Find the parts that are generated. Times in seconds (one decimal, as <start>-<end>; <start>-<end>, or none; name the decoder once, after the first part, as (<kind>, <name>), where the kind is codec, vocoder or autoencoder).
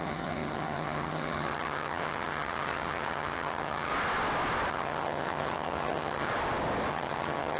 0.0-3.9 (vocoder, HiFi-GAN); 4.7-6.3; 6.9-7.6